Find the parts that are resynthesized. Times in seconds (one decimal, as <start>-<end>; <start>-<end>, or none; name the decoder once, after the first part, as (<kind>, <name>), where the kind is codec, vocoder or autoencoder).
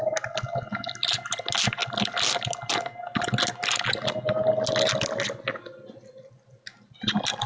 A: none